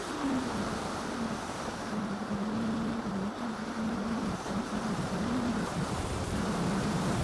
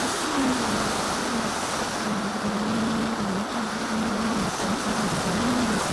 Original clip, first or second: second